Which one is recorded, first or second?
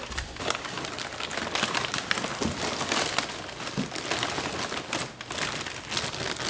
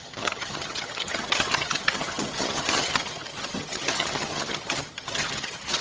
first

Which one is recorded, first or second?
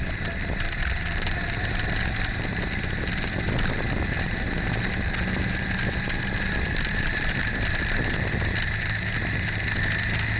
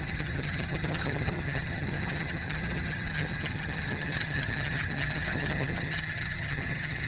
first